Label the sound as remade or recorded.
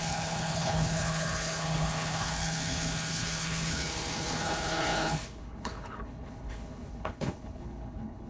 remade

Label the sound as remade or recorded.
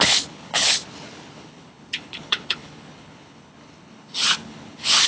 remade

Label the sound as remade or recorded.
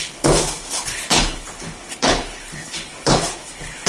remade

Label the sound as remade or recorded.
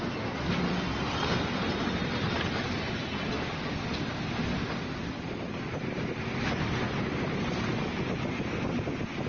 recorded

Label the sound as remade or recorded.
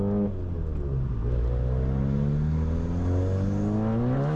recorded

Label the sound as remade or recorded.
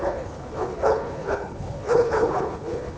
remade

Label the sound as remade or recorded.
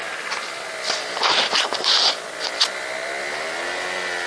recorded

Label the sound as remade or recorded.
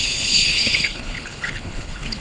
remade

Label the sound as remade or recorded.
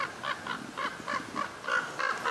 recorded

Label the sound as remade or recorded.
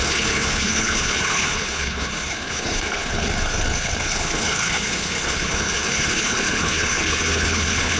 remade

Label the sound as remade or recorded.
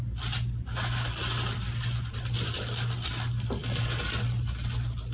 recorded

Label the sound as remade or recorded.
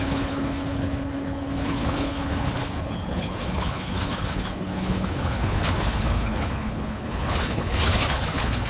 remade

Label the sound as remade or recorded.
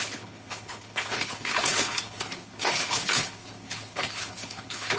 remade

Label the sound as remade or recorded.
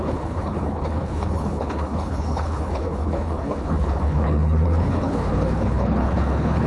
remade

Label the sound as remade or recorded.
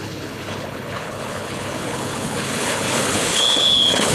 remade